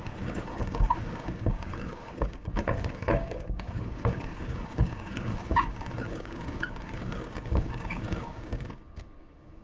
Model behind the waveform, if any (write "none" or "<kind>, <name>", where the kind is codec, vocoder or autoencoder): codec, DAC